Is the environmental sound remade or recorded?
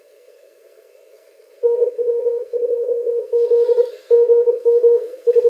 remade